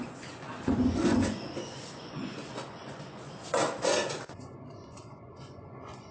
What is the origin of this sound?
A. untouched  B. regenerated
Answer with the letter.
B